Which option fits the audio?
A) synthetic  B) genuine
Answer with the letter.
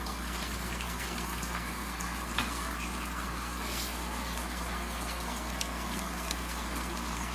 A